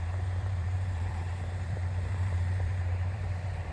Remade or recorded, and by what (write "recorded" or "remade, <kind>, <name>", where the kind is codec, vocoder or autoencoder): remade, vocoder, BigVGAN v2